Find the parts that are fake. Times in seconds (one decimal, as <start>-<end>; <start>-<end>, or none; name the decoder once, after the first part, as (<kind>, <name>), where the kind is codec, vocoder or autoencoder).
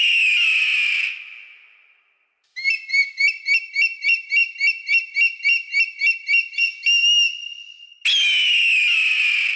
none